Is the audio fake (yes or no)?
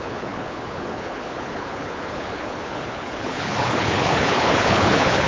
yes